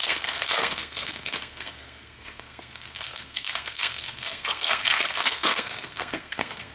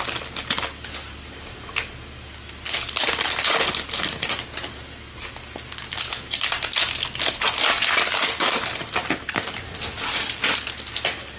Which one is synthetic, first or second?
first